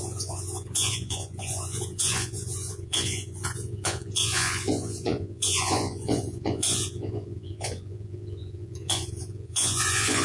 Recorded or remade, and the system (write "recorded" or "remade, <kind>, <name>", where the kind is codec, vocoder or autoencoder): remade, vocoder, Vocos